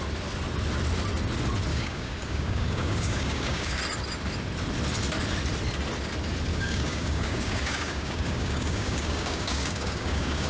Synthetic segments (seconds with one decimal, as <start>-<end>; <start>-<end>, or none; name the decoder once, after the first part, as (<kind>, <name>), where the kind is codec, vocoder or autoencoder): 1.7-3.8 (codec, DAC); 6.5-10.5